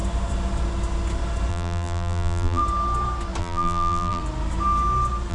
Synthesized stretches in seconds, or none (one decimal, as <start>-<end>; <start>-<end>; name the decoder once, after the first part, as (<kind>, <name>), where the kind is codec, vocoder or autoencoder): 1.5-2.6 (vocoder, BigVGAN v2); 3.4-4.2